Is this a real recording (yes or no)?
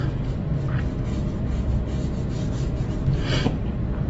yes